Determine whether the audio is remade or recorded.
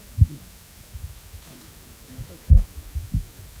remade